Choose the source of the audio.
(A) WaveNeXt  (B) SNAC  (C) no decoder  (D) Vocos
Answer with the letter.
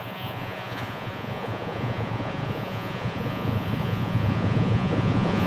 D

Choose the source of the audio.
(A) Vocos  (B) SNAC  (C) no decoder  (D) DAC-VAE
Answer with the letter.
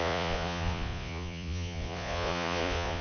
A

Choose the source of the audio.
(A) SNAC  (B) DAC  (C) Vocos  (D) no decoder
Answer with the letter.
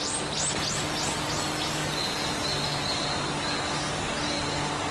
D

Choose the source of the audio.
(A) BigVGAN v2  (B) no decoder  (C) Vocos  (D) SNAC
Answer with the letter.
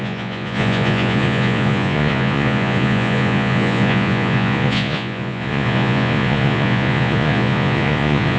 C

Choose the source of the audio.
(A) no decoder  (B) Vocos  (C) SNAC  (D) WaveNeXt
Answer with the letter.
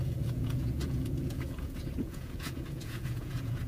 B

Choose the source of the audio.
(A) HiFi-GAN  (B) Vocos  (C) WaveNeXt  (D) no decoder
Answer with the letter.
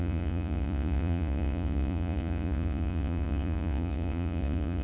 B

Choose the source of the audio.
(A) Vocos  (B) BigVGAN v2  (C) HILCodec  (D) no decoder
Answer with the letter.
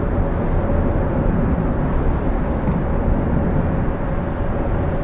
D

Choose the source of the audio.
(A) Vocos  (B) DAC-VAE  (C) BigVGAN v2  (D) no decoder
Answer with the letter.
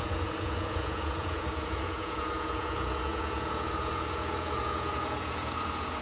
A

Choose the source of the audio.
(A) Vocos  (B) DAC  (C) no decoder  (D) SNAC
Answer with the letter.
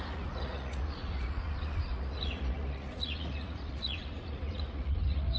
A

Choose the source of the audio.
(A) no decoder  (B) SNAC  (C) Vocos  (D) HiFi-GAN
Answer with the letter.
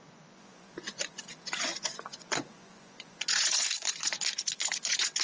C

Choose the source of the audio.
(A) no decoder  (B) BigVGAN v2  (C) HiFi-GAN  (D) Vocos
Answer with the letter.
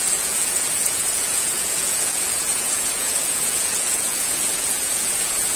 D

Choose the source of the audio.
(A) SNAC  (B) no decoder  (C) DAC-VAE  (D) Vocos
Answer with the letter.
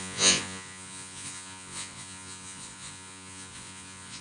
D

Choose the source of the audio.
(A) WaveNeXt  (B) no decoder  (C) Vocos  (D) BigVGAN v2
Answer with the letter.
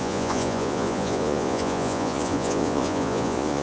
C